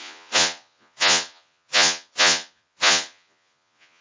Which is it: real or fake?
fake